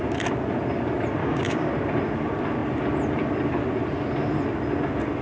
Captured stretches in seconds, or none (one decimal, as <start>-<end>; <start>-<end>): 0.0-1.2; 1.7-5.2